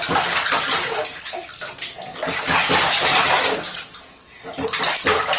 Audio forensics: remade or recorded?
recorded